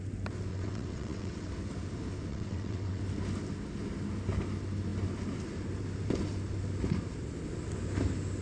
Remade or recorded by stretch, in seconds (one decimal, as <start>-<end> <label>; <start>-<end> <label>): 0.0-0.5 recorded; 0.5-1.5 remade; 1.5-2.3 recorded; 2.3-3.0 remade; 3.0-8.4 recorded